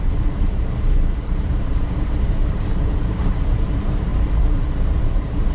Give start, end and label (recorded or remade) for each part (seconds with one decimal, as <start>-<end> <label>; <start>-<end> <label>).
0.0-5.5 remade